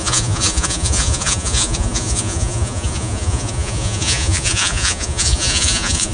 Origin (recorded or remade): remade